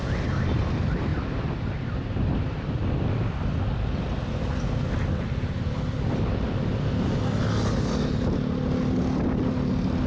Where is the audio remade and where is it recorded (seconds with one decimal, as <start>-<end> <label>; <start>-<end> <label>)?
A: 0.0-10.1 recorded

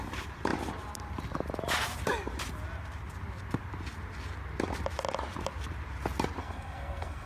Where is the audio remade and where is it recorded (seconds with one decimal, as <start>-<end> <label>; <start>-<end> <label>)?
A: 0.0-6.4 recorded; 6.4-7.3 remade